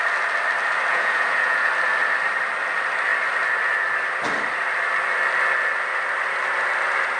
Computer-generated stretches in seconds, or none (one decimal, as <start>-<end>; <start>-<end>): 0.9-1.7